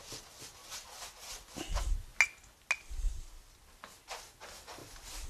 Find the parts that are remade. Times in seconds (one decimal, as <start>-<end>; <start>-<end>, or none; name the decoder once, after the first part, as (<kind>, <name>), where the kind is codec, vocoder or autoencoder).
none